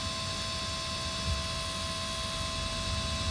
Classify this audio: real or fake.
real